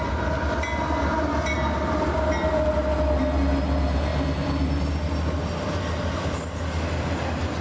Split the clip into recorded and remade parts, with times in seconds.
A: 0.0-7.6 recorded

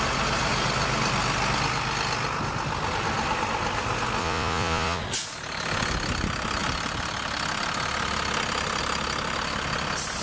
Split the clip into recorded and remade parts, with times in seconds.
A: 0.0-4.2 recorded; 4.2-5.0 remade; 5.0-10.2 recorded

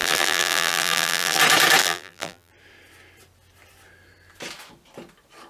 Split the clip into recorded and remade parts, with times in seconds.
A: 0.0-1.4 remade; 1.4-1.8 recorded; 1.8-2.5 remade; 2.5-5.5 recorded